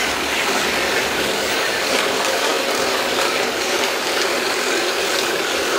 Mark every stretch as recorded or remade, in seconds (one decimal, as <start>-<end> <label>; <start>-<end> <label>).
0.0-5.8 remade